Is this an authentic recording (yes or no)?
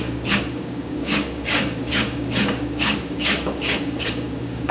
no